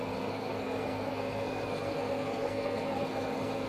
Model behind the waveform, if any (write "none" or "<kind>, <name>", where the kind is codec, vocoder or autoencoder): codec, SNAC